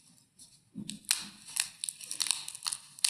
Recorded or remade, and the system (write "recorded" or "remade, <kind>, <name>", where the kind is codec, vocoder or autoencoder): recorded